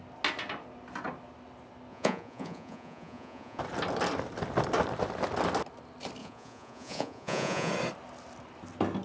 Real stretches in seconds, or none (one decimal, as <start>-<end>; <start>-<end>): 0.0-1.9; 3.6-6.2; 7.7-9.0